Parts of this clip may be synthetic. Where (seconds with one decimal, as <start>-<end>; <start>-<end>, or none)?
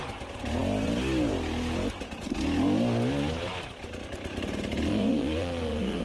4.9-6.0